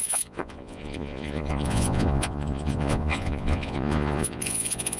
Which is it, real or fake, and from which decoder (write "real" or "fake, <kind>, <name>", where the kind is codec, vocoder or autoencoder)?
fake, vocoder, Vocos